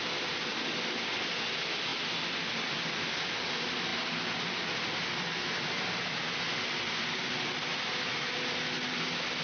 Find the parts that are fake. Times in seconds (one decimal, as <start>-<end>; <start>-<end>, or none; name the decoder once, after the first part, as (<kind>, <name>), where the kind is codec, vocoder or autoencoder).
none